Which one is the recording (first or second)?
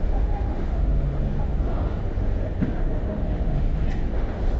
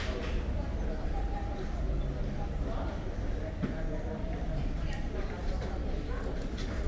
second